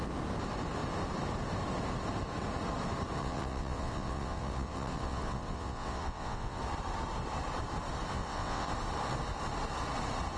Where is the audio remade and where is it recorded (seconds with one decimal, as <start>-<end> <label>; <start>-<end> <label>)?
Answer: 0.0-3.2 recorded; 3.2-6.6 remade; 6.6-8.1 recorded; 8.1-8.7 remade; 8.7-10.4 recorded